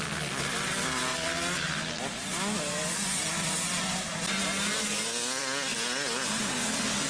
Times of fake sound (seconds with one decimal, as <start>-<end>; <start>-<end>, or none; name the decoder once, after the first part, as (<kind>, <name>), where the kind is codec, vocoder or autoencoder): none